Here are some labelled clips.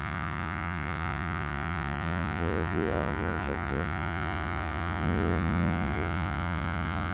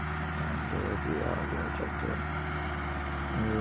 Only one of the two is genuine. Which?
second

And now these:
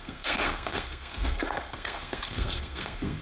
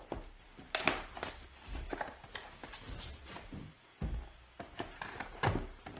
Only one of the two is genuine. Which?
second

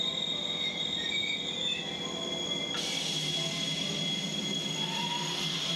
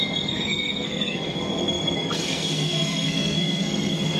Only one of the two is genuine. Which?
first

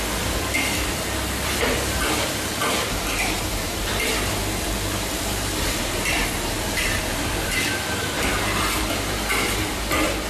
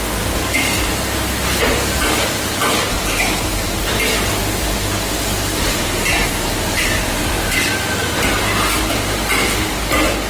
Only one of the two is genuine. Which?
second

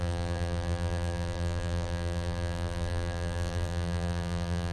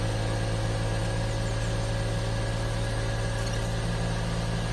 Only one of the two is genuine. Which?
second